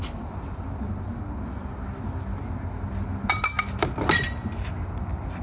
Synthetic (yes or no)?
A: no